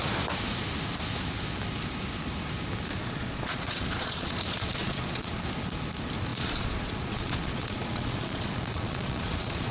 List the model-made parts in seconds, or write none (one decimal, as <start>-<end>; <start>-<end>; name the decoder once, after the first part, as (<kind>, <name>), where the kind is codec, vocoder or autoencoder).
3.0-5.4 (vocoder, Vocos); 6.3-9.7